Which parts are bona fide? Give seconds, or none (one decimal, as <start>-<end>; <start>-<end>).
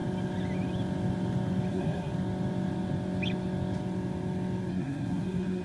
0.0-1.7; 2.1-4.7